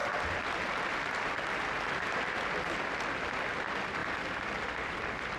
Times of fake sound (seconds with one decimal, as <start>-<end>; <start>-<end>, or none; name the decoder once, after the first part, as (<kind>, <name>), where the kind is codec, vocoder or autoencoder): none